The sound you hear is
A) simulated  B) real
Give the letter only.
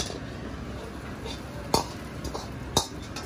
B